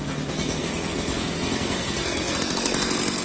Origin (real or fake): fake